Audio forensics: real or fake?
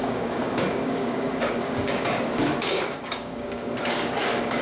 fake